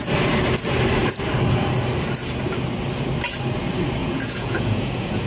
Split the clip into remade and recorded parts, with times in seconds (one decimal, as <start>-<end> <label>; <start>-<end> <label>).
0.0-4.0 recorded; 4.0-5.3 remade

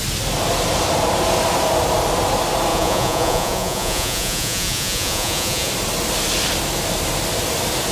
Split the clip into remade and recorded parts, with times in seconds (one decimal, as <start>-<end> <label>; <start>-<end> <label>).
0.0-2.7 recorded; 2.7-5.7 remade; 5.7-7.9 recorded

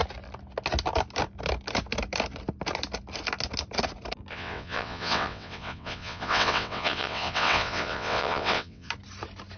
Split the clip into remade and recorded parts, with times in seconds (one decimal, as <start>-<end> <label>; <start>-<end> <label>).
0.0-4.3 recorded; 4.3-8.9 remade; 8.9-9.6 recorded

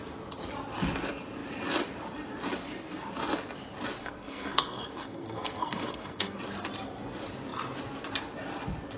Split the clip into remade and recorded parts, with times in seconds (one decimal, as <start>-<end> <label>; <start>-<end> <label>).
0.0-4.0 recorded; 4.0-6.4 remade; 6.4-9.0 recorded

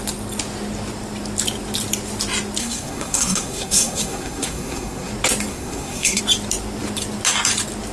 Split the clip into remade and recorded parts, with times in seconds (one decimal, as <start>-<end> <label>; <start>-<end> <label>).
0.0-2.6 recorded; 2.6-5.1 remade; 5.1-5.5 recorded; 5.5-6.2 remade; 6.2-7.9 recorded

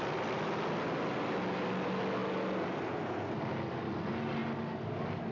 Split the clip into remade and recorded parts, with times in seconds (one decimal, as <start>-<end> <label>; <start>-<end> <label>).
0.0-5.3 recorded

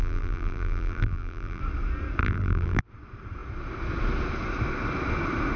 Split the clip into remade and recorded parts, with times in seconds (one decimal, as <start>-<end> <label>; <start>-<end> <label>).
0.0-1.6 remade; 1.6-2.2 recorded; 2.2-2.8 remade; 2.8-5.6 recorded

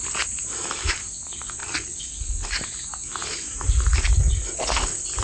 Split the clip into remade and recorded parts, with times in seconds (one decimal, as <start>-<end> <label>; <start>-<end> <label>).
0.0-5.2 recorded